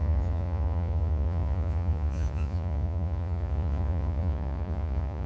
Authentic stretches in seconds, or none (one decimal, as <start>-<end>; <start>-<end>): none